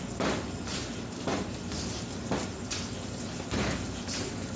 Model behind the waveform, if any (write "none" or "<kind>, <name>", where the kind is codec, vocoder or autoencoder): none